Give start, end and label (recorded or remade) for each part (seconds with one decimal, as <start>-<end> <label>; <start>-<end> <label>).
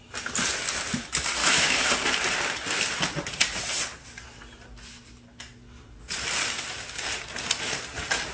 0.0-1.4 recorded; 1.4-1.9 remade; 1.9-8.3 recorded